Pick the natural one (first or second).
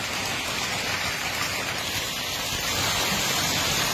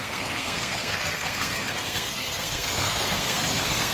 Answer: first